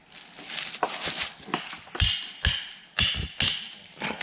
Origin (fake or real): real